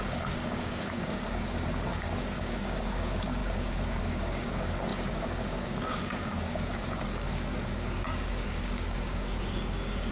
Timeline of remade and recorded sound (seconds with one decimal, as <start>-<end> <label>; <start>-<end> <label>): 0.0-10.1 remade